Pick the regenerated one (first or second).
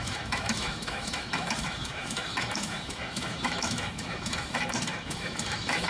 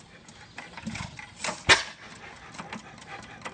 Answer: first